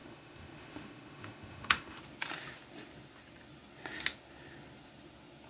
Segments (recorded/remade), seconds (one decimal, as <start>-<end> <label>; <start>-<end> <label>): 0.0-2.0 remade; 2.0-5.5 recorded